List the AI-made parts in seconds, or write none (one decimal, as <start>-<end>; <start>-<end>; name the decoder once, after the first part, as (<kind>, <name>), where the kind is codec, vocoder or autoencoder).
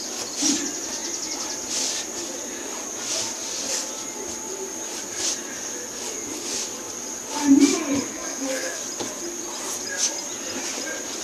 8.1-8.8 (codec, SNAC)